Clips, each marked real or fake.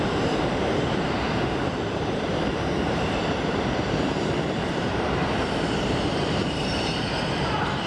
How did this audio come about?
fake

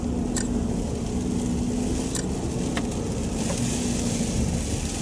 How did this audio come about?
real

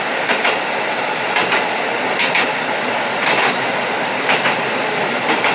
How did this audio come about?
real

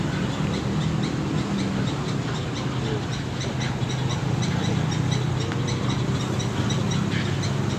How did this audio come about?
real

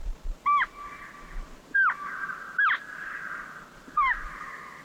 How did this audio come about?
real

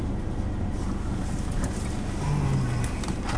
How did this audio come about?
real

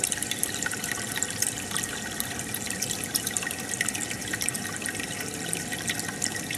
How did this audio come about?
fake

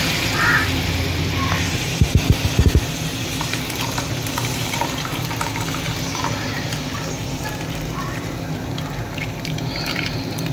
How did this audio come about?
fake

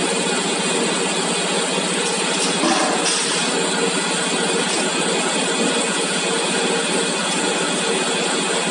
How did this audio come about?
real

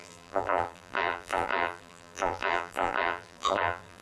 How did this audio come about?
fake